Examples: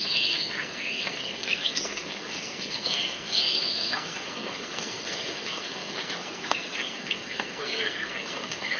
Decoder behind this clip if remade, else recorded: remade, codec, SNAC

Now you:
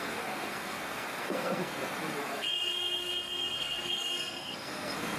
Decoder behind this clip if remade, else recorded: remade, codec, SNAC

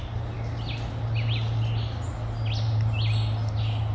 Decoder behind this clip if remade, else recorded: recorded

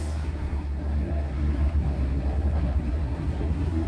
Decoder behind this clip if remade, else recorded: remade, codec, SNAC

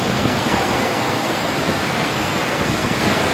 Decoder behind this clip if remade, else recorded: remade, codec, SNAC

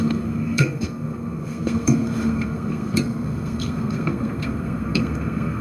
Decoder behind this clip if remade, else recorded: remade, codec, SNAC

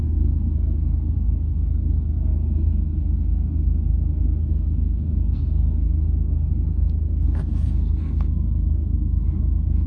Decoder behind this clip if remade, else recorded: remade, codec, SNAC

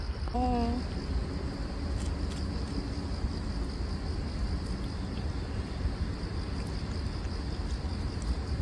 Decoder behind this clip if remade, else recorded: recorded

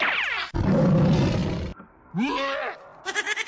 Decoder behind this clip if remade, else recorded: recorded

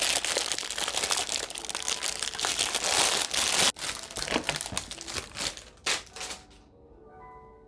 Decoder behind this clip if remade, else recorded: recorded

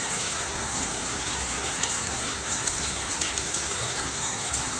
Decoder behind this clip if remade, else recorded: remade, codec, SNAC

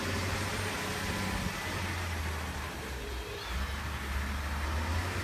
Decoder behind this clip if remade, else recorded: recorded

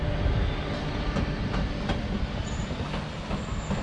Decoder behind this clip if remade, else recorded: recorded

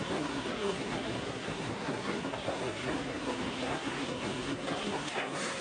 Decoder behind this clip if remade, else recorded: remade, codec, SNAC